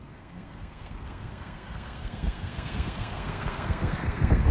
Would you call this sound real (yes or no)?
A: no